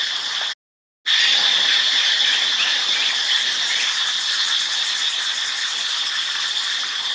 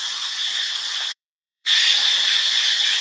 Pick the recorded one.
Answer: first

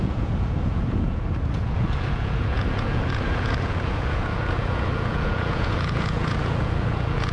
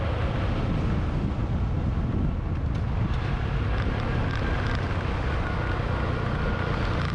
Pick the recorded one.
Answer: second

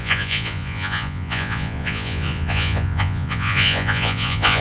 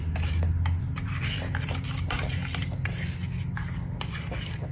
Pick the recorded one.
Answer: second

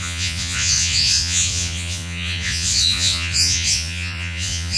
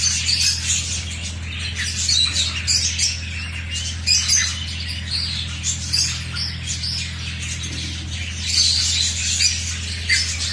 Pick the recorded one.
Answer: second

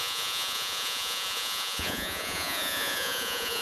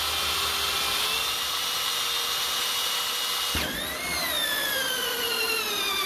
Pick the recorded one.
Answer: second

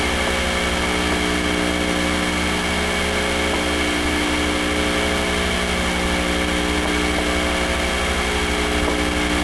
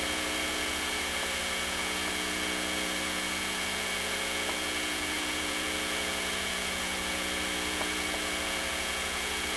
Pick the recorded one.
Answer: first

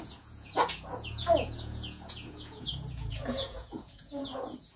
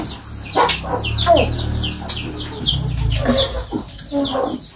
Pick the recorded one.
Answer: second